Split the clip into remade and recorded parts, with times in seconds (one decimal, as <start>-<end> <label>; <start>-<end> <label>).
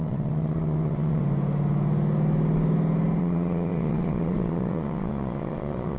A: 0.0-1.2 remade; 1.2-3.2 recorded; 3.2-6.0 remade